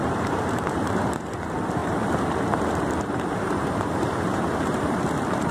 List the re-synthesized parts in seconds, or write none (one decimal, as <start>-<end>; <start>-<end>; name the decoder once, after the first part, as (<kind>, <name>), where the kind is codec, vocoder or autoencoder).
0.0-5.5 (vocoder, BigVGAN v2)